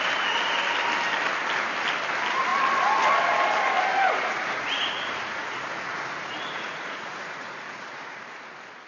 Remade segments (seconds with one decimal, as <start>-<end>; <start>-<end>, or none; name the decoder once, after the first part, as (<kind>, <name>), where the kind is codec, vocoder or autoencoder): 3.9-8.4 (vocoder, Vocos)